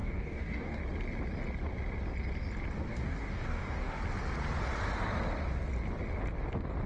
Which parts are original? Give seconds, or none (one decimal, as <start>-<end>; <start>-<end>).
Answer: 0.8-2.9; 4.0-6.9